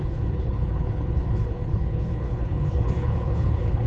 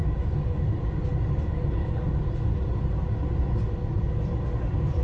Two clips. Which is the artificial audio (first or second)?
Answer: first